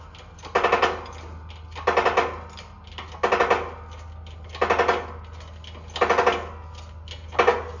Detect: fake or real real